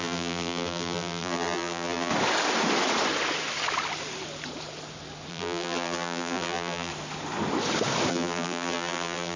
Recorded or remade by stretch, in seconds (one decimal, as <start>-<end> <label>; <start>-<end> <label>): 0.0-2.1 remade; 2.1-5.3 recorded; 5.3-6.9 remade; 6.9-8.1 recorded; 8.1-9.4 remade